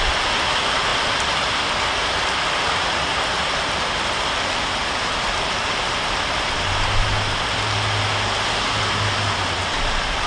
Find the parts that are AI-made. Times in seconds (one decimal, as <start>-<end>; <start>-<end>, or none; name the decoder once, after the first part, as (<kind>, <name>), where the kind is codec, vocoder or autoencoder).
none